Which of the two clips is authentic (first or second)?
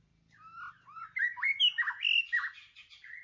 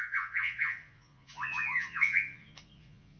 first